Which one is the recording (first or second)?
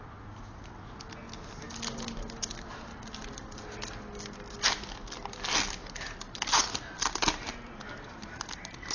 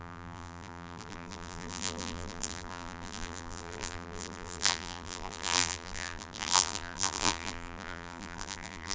first